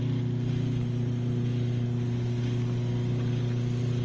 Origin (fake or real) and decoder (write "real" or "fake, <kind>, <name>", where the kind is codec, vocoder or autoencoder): real